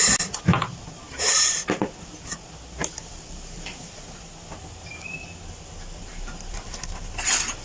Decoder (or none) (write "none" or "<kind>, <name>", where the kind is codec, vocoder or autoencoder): none